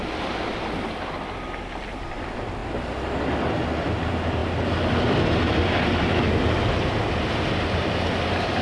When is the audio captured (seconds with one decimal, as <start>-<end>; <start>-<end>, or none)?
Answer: 0.0-8.6